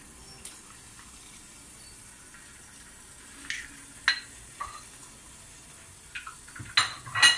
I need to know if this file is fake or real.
real